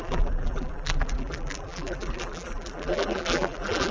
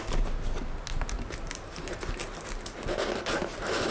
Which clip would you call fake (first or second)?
first